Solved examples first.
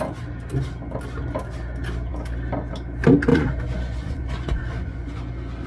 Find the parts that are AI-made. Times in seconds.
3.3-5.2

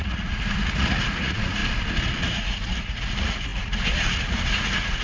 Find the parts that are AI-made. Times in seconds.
0.0-1.6; 2.2-5.0

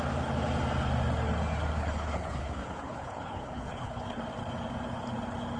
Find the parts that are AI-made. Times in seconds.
1.8-4.2

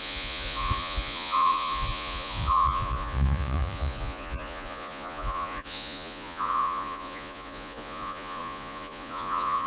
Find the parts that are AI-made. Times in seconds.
0.0-9.7

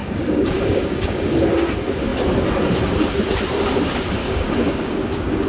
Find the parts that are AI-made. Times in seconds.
0.0-1.4; 4.2-5.5

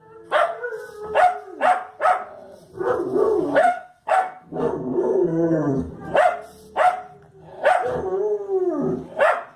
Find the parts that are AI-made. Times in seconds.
3.6-5.9